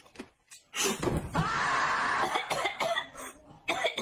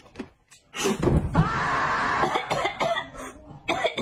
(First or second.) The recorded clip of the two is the second